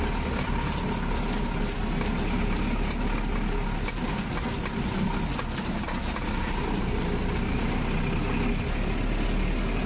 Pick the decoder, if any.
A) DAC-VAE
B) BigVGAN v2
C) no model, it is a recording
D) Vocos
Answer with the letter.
C